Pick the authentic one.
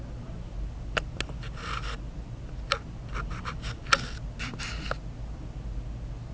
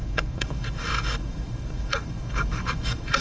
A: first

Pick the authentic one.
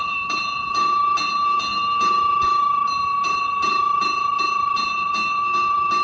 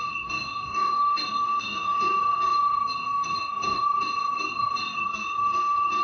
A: first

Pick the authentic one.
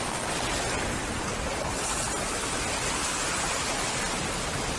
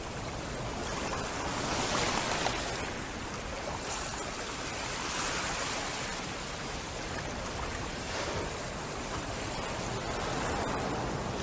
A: first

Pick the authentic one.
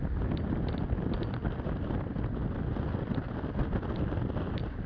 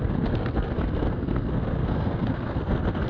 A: first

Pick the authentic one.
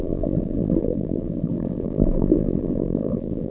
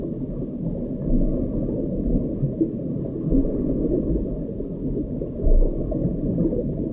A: second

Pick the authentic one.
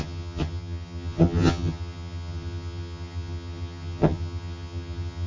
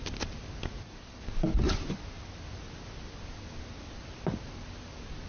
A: second